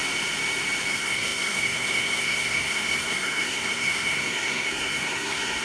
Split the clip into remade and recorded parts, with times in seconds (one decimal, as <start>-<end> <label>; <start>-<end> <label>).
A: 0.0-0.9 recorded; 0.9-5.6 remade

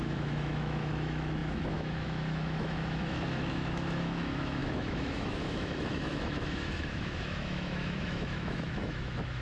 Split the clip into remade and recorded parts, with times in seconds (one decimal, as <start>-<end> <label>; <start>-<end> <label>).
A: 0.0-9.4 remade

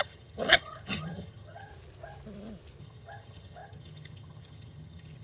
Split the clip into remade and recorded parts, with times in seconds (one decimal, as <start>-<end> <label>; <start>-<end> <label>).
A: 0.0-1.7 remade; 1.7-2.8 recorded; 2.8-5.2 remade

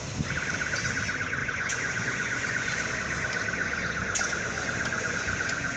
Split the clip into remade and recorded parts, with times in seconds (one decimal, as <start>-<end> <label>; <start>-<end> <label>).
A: 0.0-1.4 recorded; 1.4-2.9 remade; 2.9-3.6 recorded; 3.6-5.8 remade